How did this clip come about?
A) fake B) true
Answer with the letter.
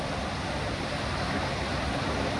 B